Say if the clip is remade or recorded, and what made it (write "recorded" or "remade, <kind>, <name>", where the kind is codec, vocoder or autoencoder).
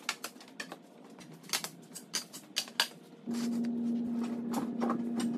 recorded